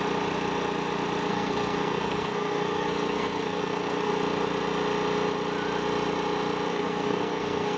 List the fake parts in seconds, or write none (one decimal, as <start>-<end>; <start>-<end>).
1.3-4.1; 6.7-7.8